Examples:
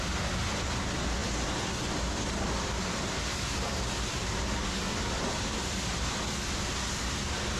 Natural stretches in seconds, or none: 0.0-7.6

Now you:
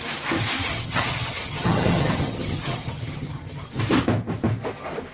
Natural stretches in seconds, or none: 0.0-0.6; 3.7-5.1

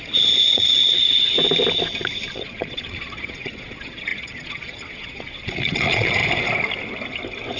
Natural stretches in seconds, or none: 0.8-2.3; 6.2-7.6

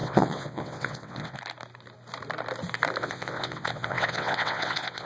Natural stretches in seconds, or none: 1.4-3.0

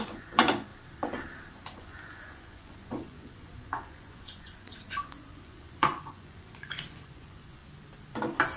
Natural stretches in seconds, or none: 0.7-1.5; 7.6-8.6

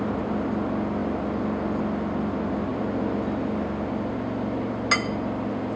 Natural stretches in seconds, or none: 0.0-5.8